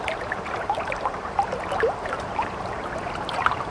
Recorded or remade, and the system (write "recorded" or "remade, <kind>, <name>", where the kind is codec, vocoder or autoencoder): remade, vocoder, BigVGAN v2